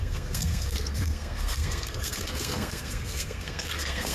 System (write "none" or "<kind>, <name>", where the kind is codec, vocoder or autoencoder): codec, SNAC